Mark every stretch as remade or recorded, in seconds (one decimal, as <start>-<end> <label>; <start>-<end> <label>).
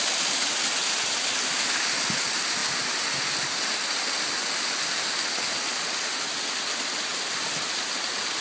0.0-7.1 recorded; 7.1-7.6 remade; 7.6-8.4 recorded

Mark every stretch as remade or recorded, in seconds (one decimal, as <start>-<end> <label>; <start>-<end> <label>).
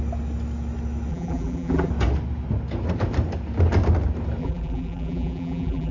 0.0-1.1 recorded; 1.1-1.9 remade; 1.9-4.4 recorded; 4.4-5.9 remade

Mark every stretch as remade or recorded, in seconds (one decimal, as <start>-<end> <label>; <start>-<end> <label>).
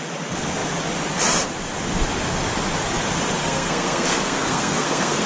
0.0-3.4 recorded; 3.4-5.3 remade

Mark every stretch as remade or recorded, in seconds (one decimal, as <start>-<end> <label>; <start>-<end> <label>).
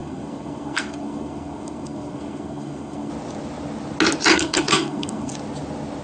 0.0-3.1 remade; 3.1-4.3 recorded; 4.3-5.3 remade; 5.3-6.0 recorded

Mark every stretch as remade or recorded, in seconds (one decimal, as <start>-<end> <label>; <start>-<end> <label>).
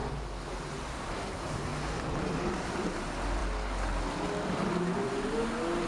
0.0-5.9 recorded